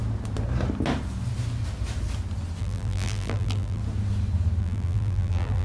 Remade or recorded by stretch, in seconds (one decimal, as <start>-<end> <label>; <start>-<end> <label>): 0.0-2.6 recorded; 2.6-3.8 remade; 3.8-4.6 recorded; 4.6-5.6 remade